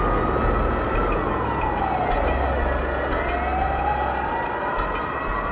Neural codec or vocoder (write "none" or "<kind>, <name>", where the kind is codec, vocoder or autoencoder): none